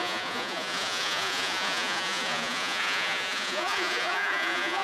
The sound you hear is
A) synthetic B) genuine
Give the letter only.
A